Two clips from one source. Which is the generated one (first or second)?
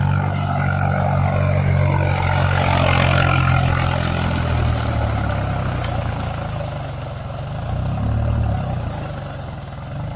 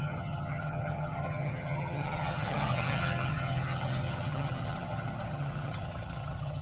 second